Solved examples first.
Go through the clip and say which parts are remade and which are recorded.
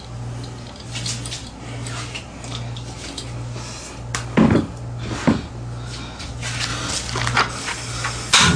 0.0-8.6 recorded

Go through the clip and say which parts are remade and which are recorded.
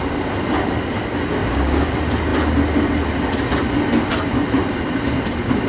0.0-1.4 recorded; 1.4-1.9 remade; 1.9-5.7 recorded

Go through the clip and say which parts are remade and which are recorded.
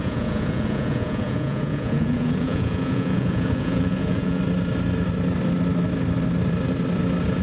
0.0-4.4 remade; 4.4-7.4 recorded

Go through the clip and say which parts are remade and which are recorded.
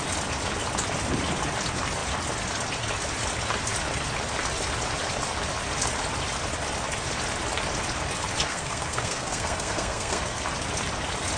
0.0-8.5 recorded; 8.5-10.4 remade; 10.4-11.4 recorded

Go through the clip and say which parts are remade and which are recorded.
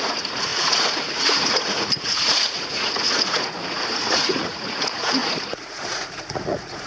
0.0-6.9 remade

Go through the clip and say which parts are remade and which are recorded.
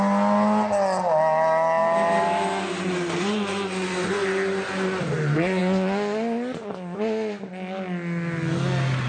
0.0-9.1 recorded